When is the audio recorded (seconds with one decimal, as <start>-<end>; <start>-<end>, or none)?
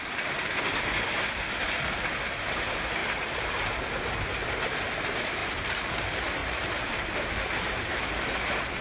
0.0-3.0; 4.0-5.4; 5.9-6.4; 8.0-8.8